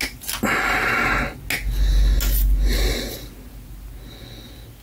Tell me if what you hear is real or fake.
real